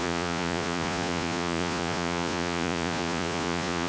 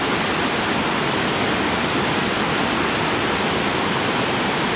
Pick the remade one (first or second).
first